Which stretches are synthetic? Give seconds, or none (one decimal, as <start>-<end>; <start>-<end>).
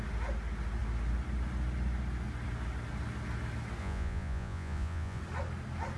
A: 3.8-5.2